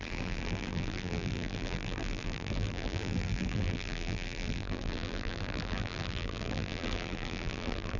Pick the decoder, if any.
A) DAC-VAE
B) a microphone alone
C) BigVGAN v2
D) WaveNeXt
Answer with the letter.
C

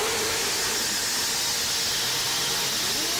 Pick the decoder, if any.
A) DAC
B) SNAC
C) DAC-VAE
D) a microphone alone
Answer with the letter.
D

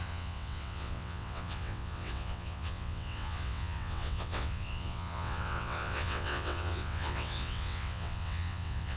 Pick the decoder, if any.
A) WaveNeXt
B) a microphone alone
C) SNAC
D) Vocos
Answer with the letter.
A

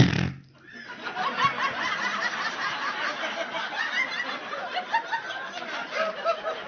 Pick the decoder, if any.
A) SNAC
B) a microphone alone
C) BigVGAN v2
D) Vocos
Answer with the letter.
B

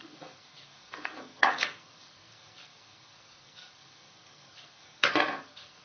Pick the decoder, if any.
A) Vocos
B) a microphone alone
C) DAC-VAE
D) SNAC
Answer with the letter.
D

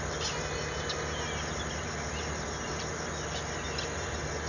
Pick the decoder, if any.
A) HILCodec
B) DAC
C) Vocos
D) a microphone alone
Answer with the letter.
D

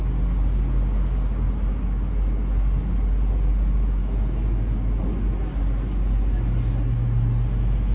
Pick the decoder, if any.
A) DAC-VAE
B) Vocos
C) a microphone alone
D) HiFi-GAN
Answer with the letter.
C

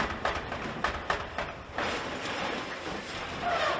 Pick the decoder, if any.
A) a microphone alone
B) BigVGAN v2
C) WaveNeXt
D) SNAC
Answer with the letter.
B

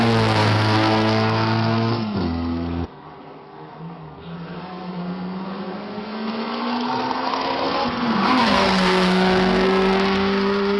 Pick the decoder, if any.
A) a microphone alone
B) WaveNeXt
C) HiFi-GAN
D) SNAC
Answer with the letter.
D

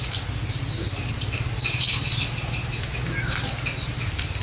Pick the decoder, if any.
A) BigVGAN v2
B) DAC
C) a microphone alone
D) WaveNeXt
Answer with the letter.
C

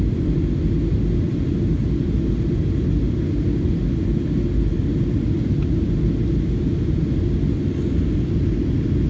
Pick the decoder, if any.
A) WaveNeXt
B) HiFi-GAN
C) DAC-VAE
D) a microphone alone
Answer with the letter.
D